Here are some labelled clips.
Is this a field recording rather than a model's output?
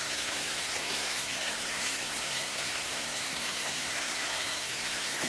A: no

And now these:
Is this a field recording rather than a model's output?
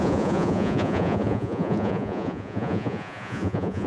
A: no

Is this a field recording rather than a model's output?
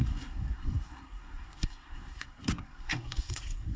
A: no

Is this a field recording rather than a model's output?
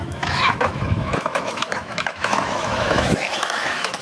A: no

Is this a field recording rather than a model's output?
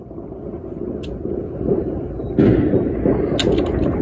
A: yes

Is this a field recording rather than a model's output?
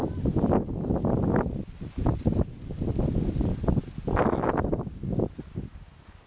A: yes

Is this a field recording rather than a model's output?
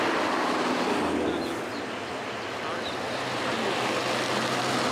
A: yes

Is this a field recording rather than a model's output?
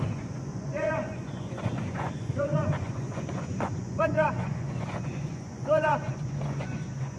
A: no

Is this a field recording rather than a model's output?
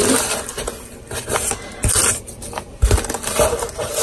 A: yes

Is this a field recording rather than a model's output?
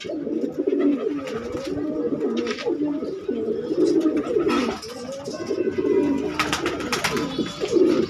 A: yes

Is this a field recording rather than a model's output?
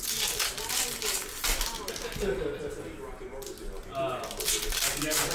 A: yes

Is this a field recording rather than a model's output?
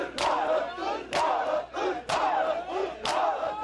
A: yes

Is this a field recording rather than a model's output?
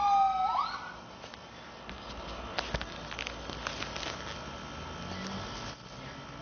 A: yes